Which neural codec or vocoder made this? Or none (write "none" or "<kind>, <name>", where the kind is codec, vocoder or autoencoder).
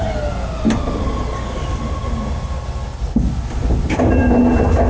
none